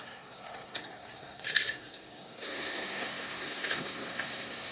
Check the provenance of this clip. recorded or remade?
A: remade